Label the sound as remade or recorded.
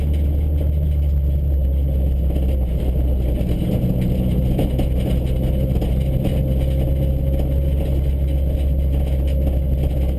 recorded